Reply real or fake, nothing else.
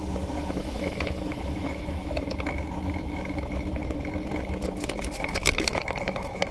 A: fake